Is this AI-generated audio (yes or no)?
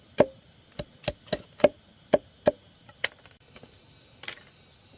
no